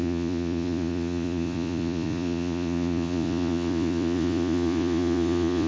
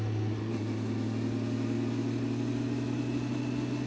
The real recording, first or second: second